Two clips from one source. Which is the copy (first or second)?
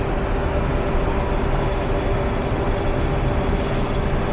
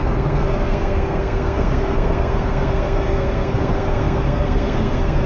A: second